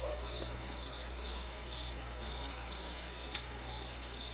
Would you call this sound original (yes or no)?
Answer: no